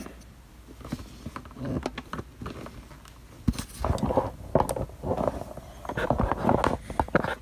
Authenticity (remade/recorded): recorded